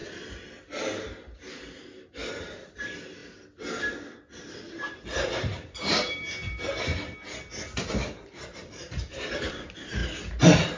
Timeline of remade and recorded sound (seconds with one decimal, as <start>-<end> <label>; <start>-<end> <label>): 0.0-2.3 recorded; 2.3-3.2 remade; 3.2-4.4 recorded; 4.4-6.9 remade; 6.9-8.0 recorded; 8.0-10.0 remade; 10.0-10.8 recorded